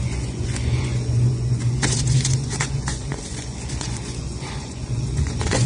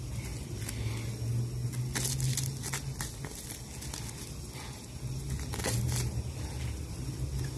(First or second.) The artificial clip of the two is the first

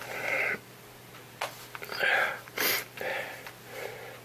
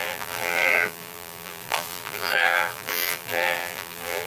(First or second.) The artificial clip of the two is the second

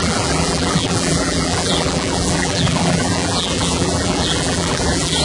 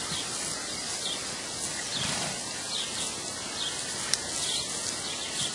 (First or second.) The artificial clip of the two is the first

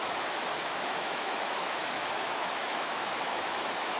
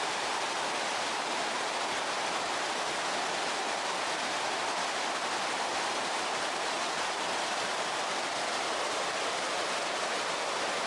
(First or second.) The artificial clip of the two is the first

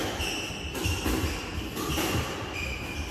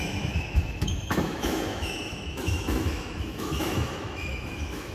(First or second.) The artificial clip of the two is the second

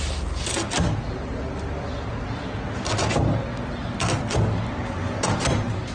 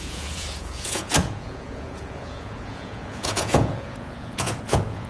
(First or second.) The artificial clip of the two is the second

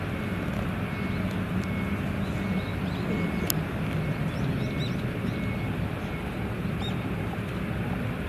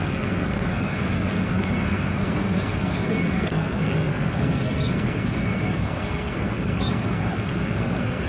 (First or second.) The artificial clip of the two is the second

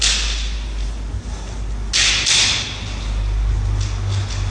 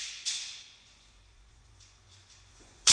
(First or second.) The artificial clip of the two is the second